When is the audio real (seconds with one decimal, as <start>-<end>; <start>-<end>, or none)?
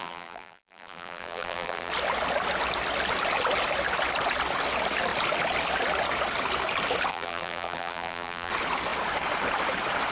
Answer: 1.9-7.1; 8.5-10.1